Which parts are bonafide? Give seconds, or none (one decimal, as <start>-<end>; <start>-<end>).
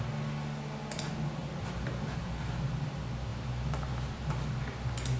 0.0-5.2